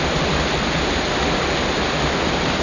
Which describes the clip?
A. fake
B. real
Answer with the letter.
B